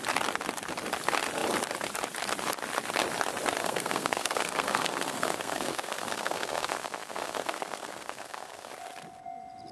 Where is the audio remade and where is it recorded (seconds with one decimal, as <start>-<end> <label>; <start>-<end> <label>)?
0.0-3.6 recorded; 3.6-8.7 remade; 8.7-9.7 recorded